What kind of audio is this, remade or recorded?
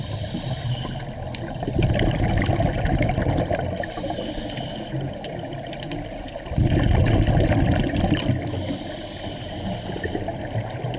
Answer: recorded